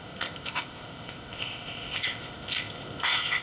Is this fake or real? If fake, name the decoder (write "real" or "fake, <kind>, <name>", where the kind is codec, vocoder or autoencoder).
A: fake, codec, ZipCodec